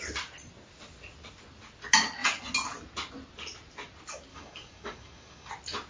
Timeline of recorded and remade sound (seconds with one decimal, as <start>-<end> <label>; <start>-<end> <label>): 0.0-4.3 recorded; 4.3-5.5 remade; 5.5-5.9 recorded